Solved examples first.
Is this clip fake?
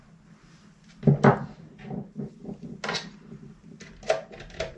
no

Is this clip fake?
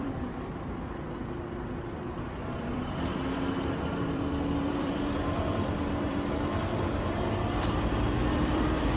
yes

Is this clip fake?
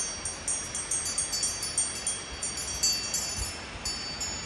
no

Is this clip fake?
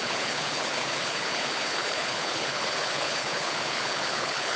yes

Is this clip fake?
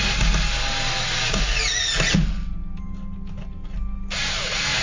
no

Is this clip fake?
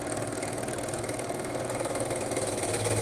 yes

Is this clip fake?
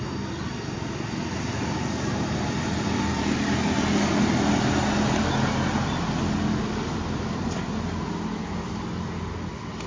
no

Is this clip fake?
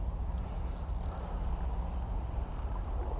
no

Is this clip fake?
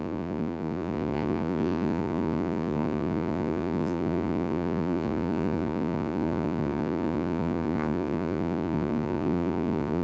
yes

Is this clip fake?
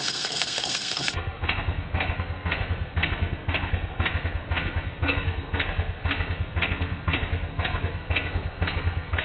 yes